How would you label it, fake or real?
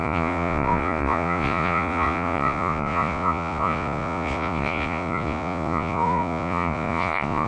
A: fake